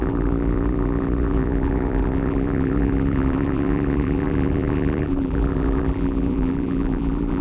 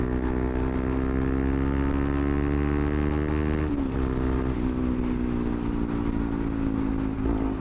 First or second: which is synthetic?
first